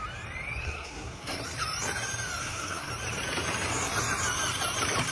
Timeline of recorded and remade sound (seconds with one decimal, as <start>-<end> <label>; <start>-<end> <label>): 0.0-0.6 recorded; 0.6-1.4 remade; 1.4-2.4 recorded; 2.4-2.9 remade; 2.9-5.1 recorded